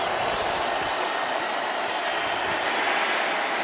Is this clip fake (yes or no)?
no